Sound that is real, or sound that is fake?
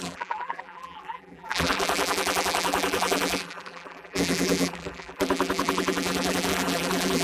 fake